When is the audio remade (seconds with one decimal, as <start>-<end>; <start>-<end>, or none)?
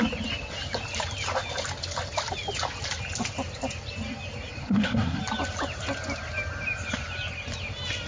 4.6-5.2